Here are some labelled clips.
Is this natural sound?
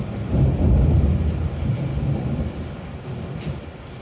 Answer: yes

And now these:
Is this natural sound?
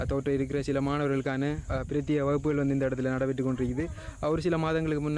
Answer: yes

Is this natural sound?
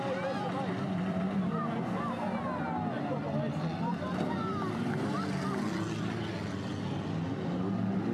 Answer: yes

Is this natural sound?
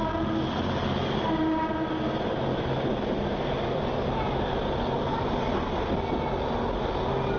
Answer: yes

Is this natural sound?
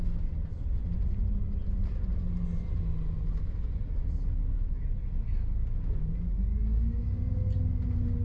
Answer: yes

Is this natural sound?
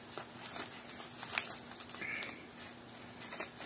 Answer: yes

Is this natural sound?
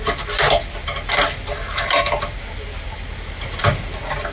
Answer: yes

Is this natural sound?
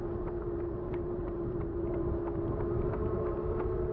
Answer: no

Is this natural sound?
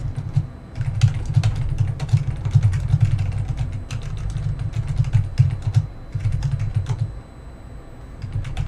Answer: yes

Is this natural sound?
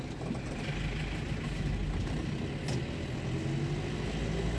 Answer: yes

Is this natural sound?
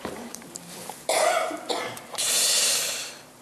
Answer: no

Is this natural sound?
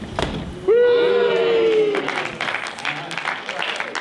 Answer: yes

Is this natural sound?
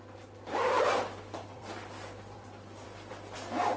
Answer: no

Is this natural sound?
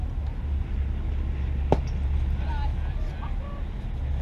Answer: yes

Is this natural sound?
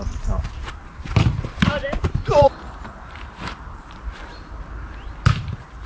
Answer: no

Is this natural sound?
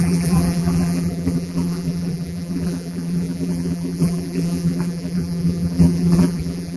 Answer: no